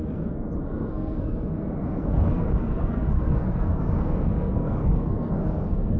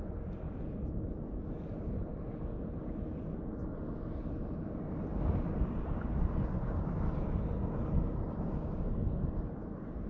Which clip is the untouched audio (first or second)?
second